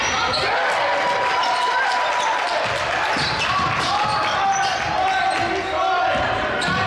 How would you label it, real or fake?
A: real